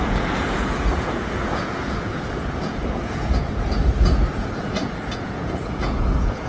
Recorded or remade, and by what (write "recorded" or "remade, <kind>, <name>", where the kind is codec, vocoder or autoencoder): remade, vocoder, Vocos